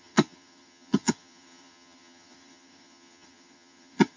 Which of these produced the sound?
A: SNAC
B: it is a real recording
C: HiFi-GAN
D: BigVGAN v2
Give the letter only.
C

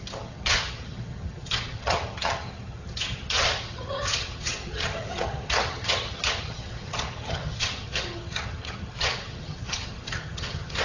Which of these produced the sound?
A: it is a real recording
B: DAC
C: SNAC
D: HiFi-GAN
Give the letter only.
D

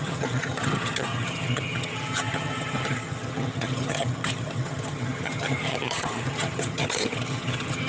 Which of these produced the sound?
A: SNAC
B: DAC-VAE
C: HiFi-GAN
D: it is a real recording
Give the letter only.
C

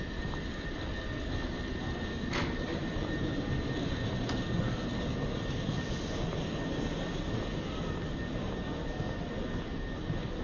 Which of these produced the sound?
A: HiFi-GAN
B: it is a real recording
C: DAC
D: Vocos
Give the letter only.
B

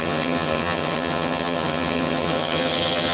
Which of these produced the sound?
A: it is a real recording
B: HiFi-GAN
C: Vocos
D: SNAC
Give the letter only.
B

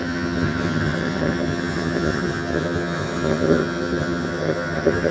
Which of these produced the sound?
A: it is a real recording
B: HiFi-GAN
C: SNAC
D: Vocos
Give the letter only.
B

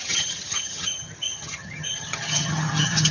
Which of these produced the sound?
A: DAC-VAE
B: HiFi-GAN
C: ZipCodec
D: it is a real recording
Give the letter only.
B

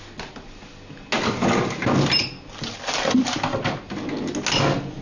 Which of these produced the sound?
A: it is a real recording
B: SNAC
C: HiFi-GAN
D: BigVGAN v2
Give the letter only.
A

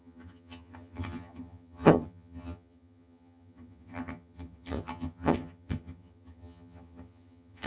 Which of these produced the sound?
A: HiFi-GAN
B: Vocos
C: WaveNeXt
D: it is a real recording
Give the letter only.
A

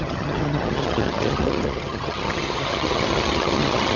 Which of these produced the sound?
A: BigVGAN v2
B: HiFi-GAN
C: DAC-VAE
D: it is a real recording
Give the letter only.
B